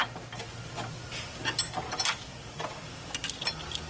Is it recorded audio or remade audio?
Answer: recorded